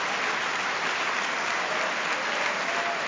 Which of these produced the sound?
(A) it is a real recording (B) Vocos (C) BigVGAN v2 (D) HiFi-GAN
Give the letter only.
A